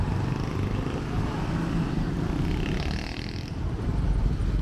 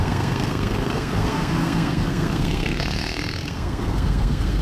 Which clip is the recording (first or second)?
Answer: first